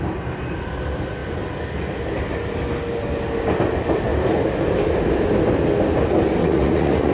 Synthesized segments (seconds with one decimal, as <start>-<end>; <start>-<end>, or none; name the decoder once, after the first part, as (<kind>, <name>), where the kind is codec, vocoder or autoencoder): 6.4-7.1 (vocoder, Vocos)

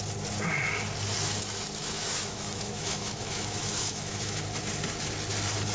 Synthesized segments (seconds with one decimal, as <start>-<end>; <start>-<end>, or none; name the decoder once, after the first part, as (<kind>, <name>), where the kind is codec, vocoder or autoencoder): 1.8-4.4 (autoencoder, DAC-VAE)

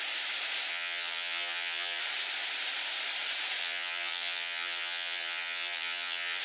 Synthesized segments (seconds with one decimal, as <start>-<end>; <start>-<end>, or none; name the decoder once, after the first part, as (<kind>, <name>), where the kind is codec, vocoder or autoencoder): 0.7-2.0 (vocoder, HiFi-GAN); 3.6-6.4

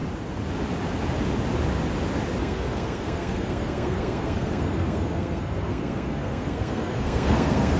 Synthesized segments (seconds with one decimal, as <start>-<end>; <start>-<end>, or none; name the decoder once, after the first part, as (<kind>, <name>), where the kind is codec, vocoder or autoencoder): 2.4-7.8 (codec, SNAC)

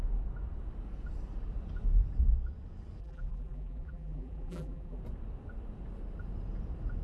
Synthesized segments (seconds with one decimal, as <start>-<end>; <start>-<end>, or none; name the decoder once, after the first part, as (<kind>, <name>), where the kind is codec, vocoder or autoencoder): 3.0-5.0 (vocoder, BigVGAN v2)

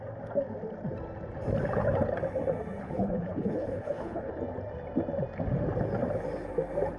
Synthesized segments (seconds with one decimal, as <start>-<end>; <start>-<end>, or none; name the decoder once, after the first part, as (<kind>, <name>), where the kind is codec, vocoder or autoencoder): 2.8-4.3 (codec, HILCodec)

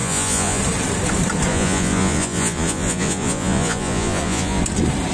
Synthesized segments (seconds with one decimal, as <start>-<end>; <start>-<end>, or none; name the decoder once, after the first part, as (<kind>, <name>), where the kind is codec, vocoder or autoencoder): 0.0-0.6 (vocoder, Vocos); 1.5-4.6